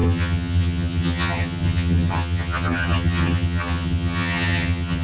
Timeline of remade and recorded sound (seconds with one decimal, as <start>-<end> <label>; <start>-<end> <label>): 0.0-5.0 remade